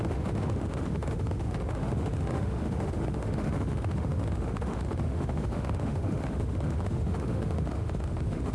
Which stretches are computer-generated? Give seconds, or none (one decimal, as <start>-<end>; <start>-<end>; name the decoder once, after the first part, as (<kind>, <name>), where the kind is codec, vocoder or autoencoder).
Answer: 0.0-8.5 (autoencoder, DAC-VAE)